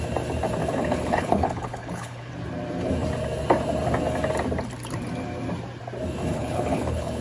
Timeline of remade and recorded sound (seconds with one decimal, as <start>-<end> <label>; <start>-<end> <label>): 0.0-0.6 recorded; 0.6-2.3 remade; 2.3-6.3 recorded; 6.3-7.2 remade